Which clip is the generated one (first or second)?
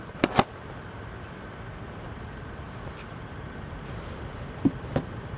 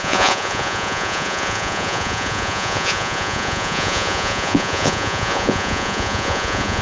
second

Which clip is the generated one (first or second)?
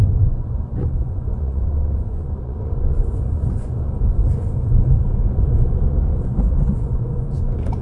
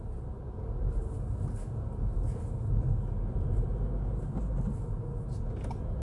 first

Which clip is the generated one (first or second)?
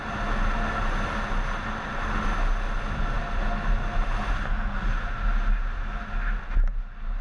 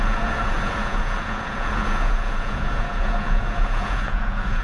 second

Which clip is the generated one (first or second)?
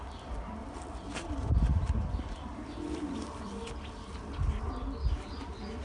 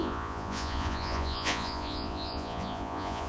second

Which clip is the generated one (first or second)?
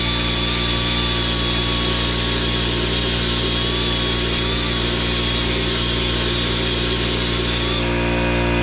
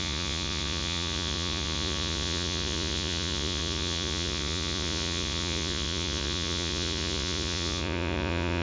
second